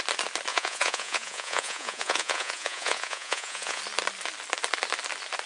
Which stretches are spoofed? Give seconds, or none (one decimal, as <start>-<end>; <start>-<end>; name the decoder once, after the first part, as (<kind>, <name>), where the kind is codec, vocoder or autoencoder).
0.5-3.8 (vocoder, Vocos)